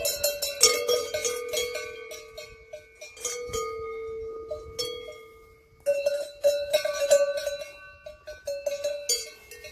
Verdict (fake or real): real